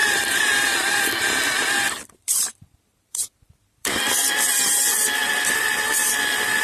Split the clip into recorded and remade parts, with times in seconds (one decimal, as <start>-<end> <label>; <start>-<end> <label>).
0.0-4.0 remade; 4.0-6.6 recorded